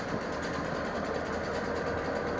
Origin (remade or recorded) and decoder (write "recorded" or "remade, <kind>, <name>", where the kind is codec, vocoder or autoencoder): recorded